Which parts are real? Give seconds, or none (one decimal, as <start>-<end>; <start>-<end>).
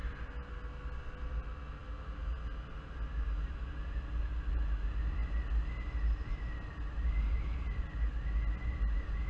0.0-9.3